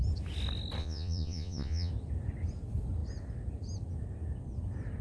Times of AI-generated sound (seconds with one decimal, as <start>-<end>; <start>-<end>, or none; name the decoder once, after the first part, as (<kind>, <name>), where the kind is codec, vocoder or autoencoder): 0.8-1.9 (vocoder, Vocos)